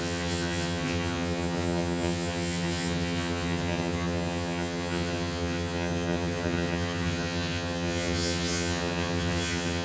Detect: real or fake fake